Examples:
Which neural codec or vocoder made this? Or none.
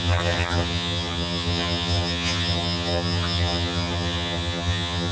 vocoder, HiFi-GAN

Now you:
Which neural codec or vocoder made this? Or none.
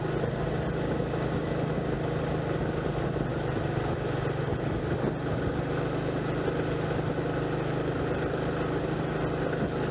none